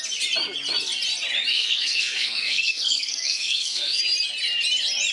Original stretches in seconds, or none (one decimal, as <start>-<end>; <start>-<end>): 0.0-1.5; 4.0-5.1